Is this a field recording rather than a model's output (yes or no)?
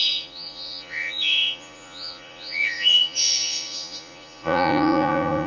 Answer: no